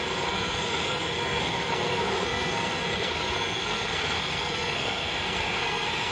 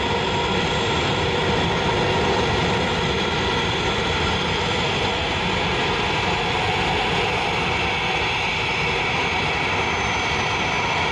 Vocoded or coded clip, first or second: first